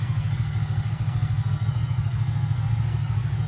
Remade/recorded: remade